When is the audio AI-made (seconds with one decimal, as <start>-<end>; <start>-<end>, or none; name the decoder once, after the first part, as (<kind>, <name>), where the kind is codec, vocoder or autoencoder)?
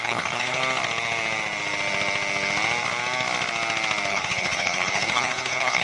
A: 0.0-0.6 (codec, HILCodec); 4.1-5.8